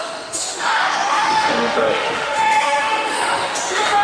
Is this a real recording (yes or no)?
no